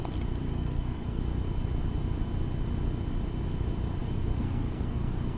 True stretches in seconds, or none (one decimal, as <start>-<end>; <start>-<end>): 0.0-0.5; 1.2-4.0